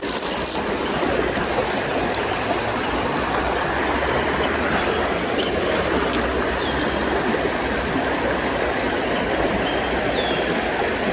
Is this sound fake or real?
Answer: real